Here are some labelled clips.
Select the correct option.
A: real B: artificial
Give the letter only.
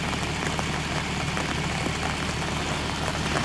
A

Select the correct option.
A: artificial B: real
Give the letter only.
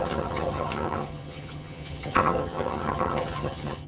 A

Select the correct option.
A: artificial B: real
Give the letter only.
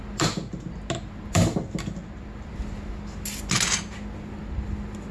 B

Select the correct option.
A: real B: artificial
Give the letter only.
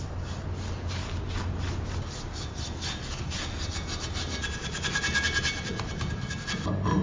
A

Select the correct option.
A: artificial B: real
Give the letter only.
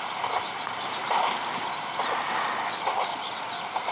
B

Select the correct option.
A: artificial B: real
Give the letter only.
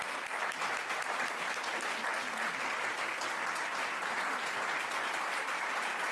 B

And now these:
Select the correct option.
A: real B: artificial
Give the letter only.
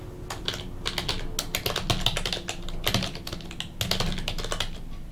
A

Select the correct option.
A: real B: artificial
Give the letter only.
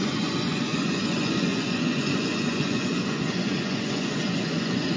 B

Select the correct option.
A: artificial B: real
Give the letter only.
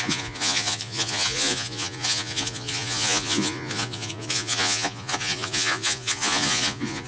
A